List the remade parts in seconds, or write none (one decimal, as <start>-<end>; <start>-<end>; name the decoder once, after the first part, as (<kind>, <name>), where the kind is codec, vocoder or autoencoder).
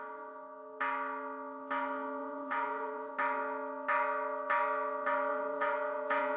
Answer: 2.2-3.1 (vocoder, Vocos); 5.3-6.4